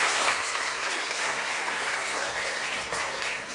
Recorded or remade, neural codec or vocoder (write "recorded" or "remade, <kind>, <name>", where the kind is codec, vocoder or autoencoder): remade, codec, SNAC